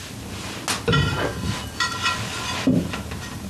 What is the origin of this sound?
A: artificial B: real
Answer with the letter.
B